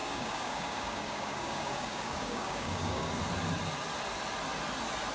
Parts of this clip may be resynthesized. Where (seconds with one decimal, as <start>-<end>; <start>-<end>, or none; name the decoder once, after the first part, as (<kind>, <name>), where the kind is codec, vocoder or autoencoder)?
0.0-3.1 (codec, DAC)